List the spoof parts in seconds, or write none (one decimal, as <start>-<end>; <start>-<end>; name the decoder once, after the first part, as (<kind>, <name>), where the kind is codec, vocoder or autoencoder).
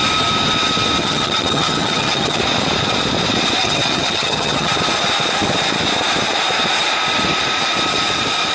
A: 1.0-2.4 (vocoder, HiFi-GAN); 3.6-4.7